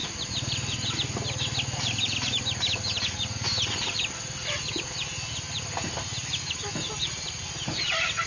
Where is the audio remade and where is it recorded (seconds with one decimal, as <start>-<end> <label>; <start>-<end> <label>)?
0.0-5.1 remade; 5.1-6.8 recorded; 6.8-8.3 remade